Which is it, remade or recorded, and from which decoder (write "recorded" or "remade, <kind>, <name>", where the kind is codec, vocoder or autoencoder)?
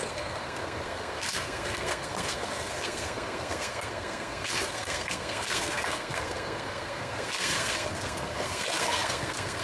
remade, codec, SNAC